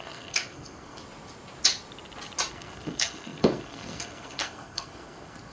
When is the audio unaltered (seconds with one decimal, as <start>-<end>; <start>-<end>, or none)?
1.0-2.5

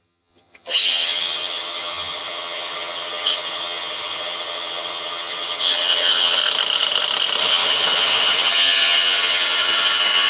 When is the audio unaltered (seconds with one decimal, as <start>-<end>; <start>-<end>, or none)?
6.4-7.4

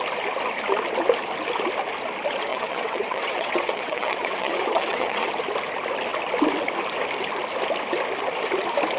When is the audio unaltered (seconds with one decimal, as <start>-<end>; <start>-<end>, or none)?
0.0-2.5; 5.3-9.0

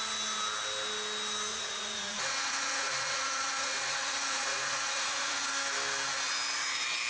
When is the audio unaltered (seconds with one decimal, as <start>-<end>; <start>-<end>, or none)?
0.0-1.5; 5.5-7.1

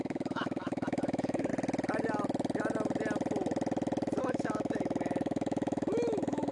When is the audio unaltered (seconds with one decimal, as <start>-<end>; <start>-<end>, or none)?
1.5-4.2

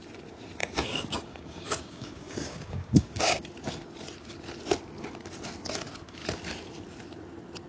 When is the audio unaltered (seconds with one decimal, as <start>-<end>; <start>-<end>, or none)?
0.0-0.6; 3.4-7.7